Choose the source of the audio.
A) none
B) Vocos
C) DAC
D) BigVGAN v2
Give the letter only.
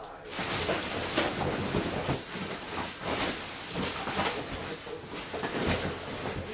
A